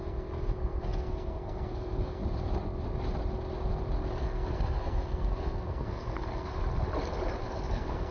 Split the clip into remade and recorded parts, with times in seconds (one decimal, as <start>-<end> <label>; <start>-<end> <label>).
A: 0.0-2.2 remade; 2.2-4.2 recorded; 4.2-6.5 remade; 6.5-7.5 recorded; 7.5-8.1 remade